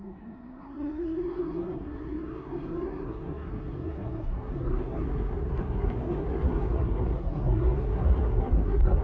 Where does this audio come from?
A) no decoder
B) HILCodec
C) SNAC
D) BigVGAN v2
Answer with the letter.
C